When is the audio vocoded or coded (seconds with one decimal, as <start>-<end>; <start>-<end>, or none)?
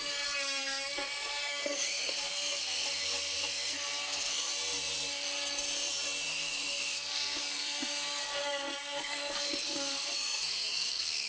0.0-4.5; 6.3-11.3